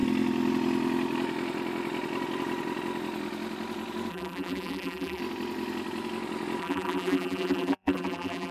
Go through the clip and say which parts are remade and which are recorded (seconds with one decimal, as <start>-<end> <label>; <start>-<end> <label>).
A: 0.0-4.1 recorded; 4.1-5.2 remade; 5.2-6.6 recorded; 6.6-8.5 remade